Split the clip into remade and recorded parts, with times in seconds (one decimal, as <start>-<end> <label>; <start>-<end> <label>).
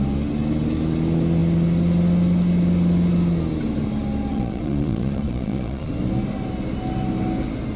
0.0-4.3 recorded; 4.3-5.9 remade; 5.9-7.8 recorded